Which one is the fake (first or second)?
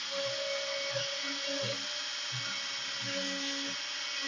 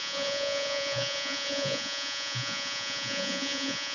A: second